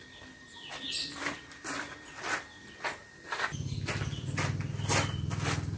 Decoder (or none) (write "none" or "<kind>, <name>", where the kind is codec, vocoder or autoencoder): none